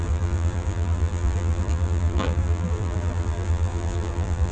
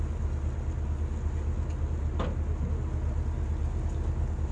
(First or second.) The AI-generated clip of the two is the first